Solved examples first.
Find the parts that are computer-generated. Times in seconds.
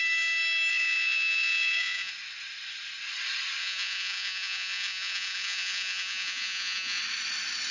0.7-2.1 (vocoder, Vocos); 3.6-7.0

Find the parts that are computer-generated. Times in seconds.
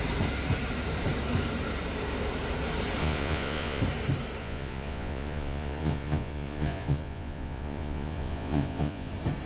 3.0-3.8 (vocoder, Vocos); 4.4-9.1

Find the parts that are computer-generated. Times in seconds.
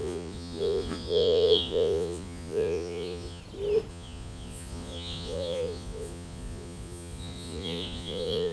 0.0-3.4 (vocoder, Vocos); 3.9-8.5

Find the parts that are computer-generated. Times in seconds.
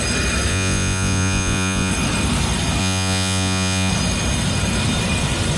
0.5-1.9 (vocoder, Vocos); 2.8-3.9